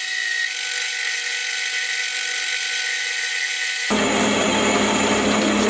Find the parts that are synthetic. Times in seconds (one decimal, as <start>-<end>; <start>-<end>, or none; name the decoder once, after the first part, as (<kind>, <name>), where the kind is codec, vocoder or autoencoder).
none